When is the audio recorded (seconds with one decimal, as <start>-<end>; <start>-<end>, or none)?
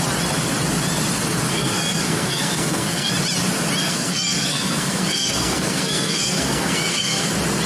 0.0-1.5; 3.1-3.8; 7.3-7.7